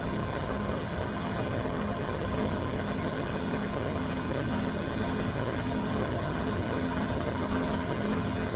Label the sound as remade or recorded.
remade